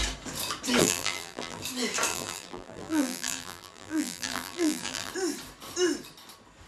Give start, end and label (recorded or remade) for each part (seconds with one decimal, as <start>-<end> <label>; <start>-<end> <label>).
0.0-0.8 recorded; 0.8-1.6 remade; 1.6-2.1 recorded; 2.1-5.1 remade; 5.1-6.7 recorded